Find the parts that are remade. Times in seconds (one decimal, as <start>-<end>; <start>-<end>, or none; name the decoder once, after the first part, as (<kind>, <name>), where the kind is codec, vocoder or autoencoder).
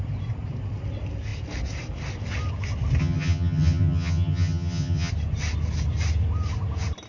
3.0-5.1 (vocoder, HiFi-GAN)